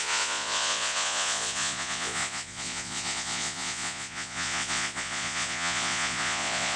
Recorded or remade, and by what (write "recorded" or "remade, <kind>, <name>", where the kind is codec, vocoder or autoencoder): remade, vocoder, Vocos